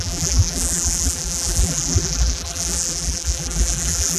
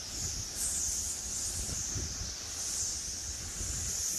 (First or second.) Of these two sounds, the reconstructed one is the first